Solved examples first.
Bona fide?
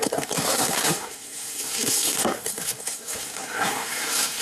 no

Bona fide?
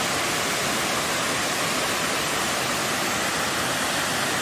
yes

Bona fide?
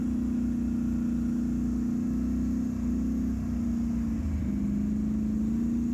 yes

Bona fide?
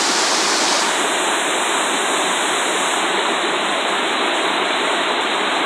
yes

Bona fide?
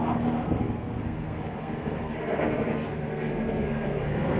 no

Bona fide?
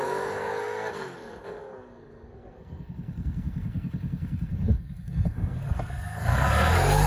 no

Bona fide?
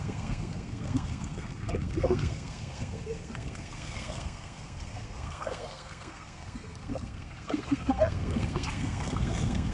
no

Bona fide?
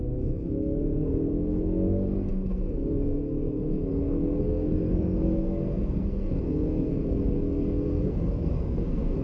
no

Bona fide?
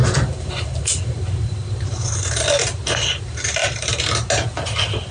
yes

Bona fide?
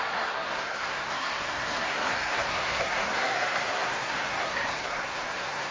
no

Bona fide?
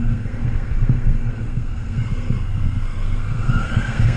no